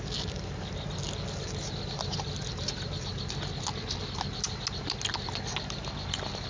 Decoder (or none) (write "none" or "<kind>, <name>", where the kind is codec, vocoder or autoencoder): none